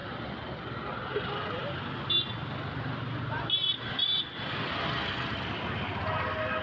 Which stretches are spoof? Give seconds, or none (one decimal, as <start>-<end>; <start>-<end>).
none